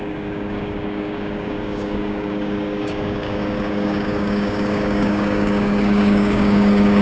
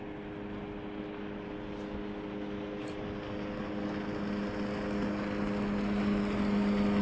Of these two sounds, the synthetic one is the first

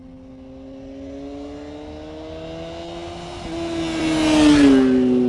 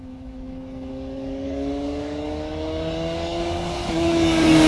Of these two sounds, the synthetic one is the second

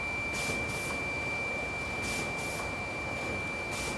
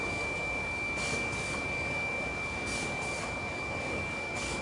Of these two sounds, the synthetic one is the second